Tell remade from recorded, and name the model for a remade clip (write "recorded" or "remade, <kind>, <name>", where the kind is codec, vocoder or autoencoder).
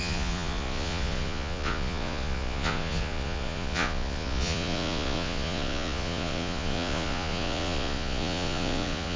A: remade, vocoder, Vocos